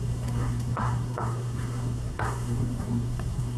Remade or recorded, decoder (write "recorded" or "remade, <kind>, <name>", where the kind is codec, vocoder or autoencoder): remade, codec, SNAC